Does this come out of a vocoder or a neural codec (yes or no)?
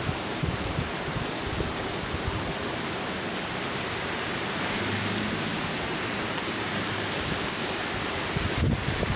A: yes